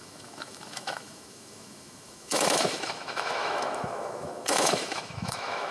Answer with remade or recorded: remade